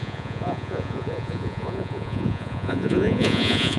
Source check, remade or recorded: remade